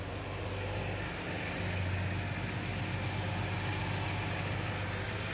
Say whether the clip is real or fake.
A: real